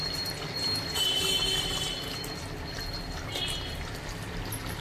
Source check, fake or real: real